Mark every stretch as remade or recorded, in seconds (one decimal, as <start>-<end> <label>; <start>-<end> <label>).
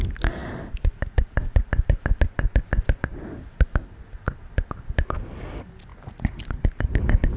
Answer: 0.0-7.4 recorded